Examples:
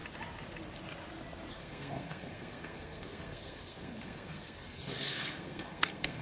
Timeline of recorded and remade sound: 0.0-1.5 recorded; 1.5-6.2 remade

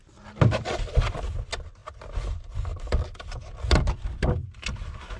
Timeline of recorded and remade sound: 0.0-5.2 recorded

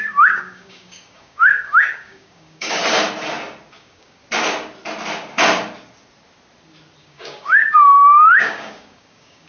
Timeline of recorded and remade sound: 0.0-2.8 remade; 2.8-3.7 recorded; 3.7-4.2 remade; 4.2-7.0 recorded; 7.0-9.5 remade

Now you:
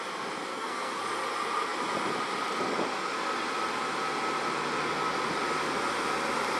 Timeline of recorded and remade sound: 0.0-0.5 recorded; 0.5-1.0 remade; 1.0-6.6 recorded